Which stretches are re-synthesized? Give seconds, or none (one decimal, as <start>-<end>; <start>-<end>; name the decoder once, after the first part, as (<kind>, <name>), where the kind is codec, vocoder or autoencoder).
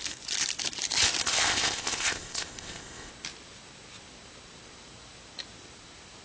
1.2-3.1 (codec, ZipCodec)